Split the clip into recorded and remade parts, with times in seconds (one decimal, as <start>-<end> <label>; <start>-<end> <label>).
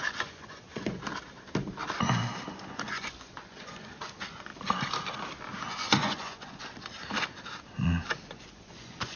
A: 0.0-1.1 remade; 1.1-2.5 recorded; 2.5-4.5 remade; 4.5-5.7 recorded; 5.7-6.6 remade; 6.6-8.3 recorded; 8.3-9.2 remade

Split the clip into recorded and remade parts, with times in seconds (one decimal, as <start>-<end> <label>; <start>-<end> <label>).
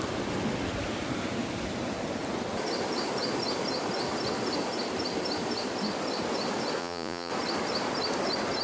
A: 0.0-6.8 recorded; 6.8-7.3 remade; 7.3-8.6 recorded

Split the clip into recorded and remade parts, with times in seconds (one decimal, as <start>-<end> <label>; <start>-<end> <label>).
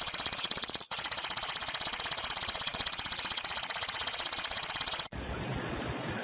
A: 0.0-6.2 remade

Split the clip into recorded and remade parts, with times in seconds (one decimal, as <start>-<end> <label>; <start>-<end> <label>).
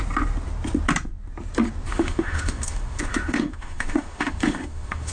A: 0.0-1.9 recorded; 1.9-5.1 remade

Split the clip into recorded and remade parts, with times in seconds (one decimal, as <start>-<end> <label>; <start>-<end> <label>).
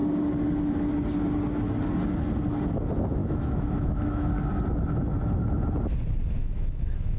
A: 0.0-3.2 recorded; 3.2-4.3 remade; 4.3-6.4 recorded; 6.4-7.2 remade